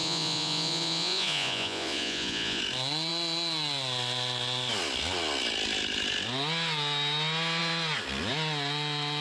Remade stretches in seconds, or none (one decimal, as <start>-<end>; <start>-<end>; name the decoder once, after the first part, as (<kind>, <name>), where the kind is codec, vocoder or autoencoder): 0.0-2.6 (vocoder, Vocos)